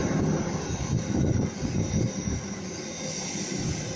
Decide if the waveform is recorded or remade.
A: recorded